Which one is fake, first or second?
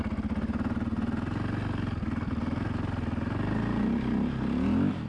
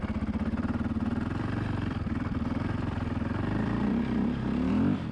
second